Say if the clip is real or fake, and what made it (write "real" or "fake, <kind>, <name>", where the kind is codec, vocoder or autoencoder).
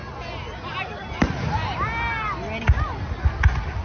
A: real